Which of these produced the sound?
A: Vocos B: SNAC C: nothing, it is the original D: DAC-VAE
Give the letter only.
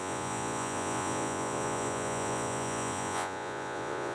A